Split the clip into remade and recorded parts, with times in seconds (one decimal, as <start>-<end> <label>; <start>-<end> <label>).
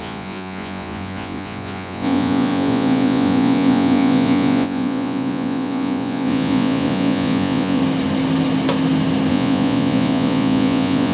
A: 0.0-7.8 remade; 7.8-9.3 recorded; 9.3-11.1 remade